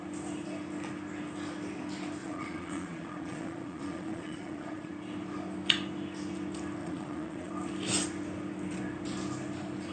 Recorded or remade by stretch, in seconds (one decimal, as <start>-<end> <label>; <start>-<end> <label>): 0.0-2.2 recorded; 2.2-4.9 remade; 4.9-6.8 recorded; 6.8-7.5 remade; 7.5-9.9 recorded